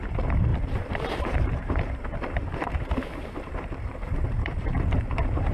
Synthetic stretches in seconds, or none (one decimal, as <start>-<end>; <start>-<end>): 0.0-5.5